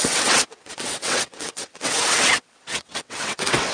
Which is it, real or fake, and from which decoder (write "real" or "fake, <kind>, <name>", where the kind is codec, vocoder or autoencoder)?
fake, vocoder, WaveNeXt